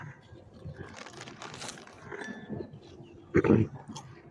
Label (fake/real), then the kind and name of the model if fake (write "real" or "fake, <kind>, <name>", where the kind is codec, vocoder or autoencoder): real